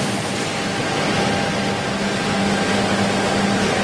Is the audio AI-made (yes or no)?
no